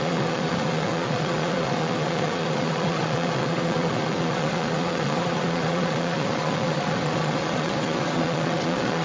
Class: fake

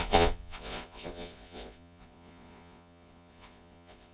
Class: fake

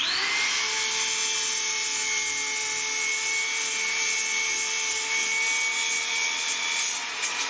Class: real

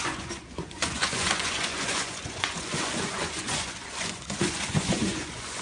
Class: fake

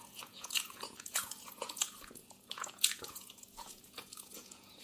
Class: fake